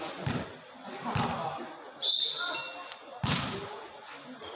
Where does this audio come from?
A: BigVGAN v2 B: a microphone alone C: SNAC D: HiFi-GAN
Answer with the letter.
B